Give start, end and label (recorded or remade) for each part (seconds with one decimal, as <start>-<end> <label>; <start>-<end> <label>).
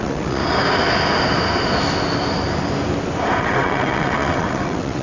0.0-0.4 remade; 0.4-3.4 recorded; 3.4-5.0 remade